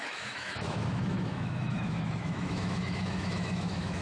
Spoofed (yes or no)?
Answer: yes